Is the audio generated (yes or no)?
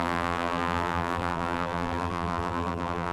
yes